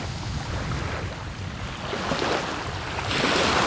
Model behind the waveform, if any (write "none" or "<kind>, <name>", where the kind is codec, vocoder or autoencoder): none